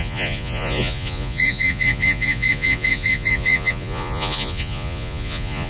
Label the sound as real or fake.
fake